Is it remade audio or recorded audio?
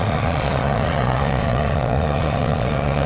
remade